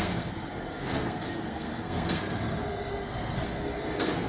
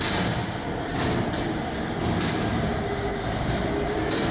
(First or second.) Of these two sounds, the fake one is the first